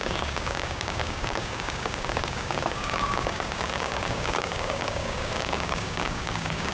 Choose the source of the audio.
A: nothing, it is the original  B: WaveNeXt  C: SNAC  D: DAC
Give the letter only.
D